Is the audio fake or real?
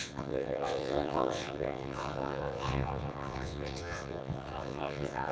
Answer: fake